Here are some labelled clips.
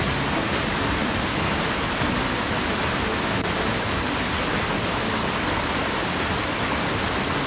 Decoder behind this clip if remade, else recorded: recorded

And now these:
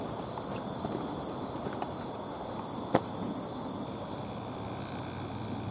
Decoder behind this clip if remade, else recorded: recorded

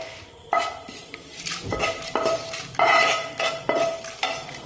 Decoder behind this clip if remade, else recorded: recorded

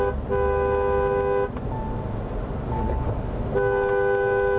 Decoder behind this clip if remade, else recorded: recorded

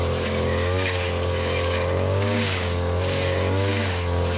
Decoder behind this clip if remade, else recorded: remade, codec, DAC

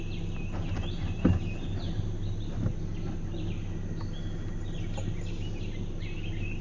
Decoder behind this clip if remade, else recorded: recorded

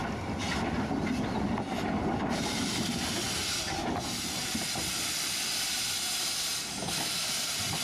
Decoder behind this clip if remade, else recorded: recorded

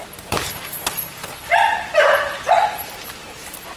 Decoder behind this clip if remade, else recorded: remade, vocoder, BigVGAN v2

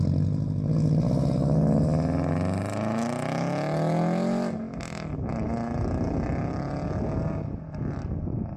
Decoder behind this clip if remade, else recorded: recorded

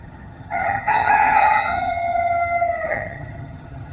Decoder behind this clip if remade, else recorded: remade, vocoder, HiFi-GAN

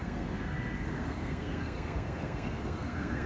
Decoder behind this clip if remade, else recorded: remade, codec, SNAC